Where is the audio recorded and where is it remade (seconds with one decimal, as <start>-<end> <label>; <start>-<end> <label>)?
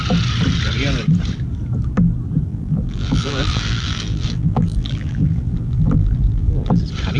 0.0-2.5 recorded; 2.5-6.8 remade; 6.8-7.2 recorded